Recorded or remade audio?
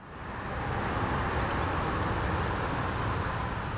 recorded